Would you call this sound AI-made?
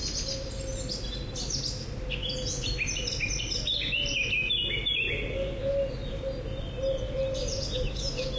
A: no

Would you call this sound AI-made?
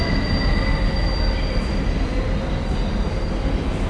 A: no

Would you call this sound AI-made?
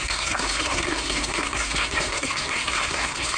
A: yes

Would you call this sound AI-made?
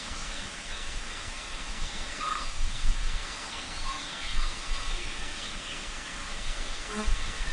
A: yes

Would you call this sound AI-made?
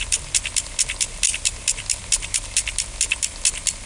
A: no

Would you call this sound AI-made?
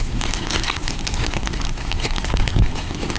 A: yes